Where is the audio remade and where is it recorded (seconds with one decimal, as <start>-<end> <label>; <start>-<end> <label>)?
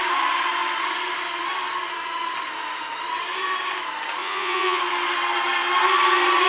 0.0-4.2 recorded; 4.2-4.8 remade; 4.8-6.5 recorded